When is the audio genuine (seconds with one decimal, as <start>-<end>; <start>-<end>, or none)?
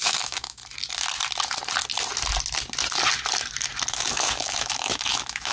0.6-3.9